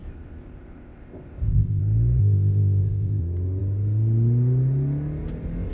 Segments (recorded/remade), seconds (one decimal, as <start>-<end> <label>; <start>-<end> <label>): 0.0-1.8 remade; 1.8-2.2 recorded; 2.2-3.2 remade; 3.2-5.7 recorded

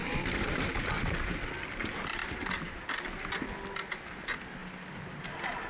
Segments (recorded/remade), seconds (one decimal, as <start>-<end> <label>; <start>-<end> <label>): 0.0-2.2 recorded; 2.2-3.0 remade; 3.0-5.7 recorded

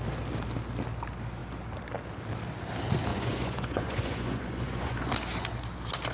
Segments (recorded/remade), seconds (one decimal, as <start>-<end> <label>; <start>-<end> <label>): 0.0-3.1 recorded; 3.1-5.1 remade; 5.1-6.1 recorded

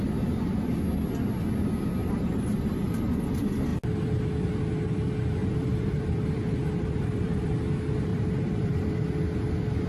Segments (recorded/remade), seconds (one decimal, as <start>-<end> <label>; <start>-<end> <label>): 0.0-2.0 recorded; 2.0-3.3 remade; 3.3-5.4 recorded; 5.4-7.5 remade; 7.5-8.1 recorded; 8.1-8.9 remade; 8.9-9.9 recorded

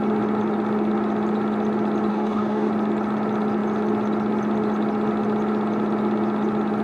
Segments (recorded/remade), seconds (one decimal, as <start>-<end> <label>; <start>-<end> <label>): 0.0-2.1 recorded; 2.1-2.7 remade; 2.7-6.8 recorded

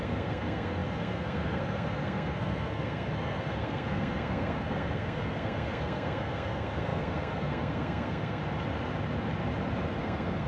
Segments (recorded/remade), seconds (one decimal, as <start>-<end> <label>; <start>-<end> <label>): 0.0-8.4 remade; 8.4-10.0 recorded; 10.0-10.5 remade

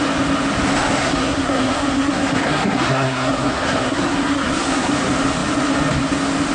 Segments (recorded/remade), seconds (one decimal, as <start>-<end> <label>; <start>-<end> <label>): 0.0-1.0 recorded; 1.0-4.9 remade; 4.9-6.5 recorded

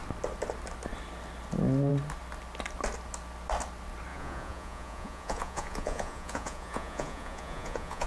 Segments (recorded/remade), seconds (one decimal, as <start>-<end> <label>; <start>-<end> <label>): 0.0-4.1 recorded; 4.1-8.1 remade